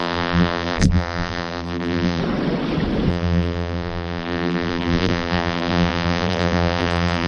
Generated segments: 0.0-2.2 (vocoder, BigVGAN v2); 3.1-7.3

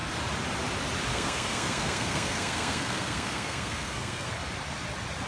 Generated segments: 1.1-4.3 (codec, SNAC)

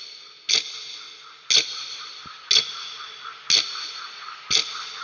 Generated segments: none

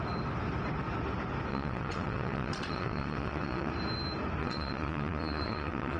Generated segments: 1.5-3.7 (vocoder, WaveNeXt); 4.4-6.0

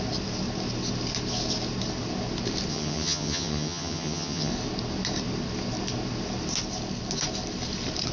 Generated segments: 2.7-4.5 (vocoder, HiFi-GAN)